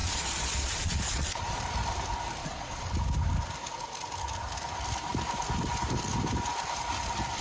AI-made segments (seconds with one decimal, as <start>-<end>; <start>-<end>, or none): 0.0-1.6; 2.4-2.9